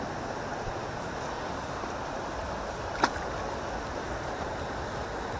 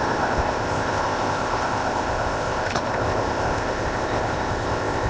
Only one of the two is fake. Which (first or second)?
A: second